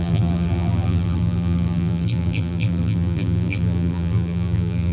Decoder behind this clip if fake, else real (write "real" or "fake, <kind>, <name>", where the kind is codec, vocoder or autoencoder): fake, vocoder, BigVGAN v2